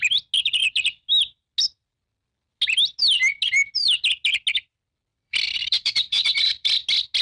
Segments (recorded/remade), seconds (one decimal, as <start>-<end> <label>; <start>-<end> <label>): 0.0-5.1 recorded; 5.1-6.7 remade; 6.7-7.2 recorded